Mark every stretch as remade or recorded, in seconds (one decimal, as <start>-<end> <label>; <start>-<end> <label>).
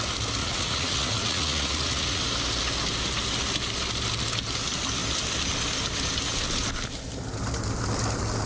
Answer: 0.0-0.4 recorded; 0.4-2.2 remade; 2.2-8.5 recorded